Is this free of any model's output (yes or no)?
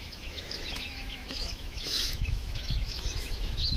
no